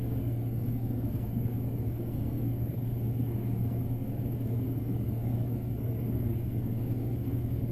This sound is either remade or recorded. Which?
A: remade